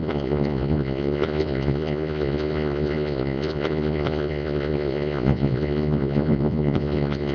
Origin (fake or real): fake